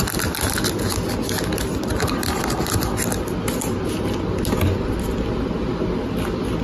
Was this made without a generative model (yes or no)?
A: yes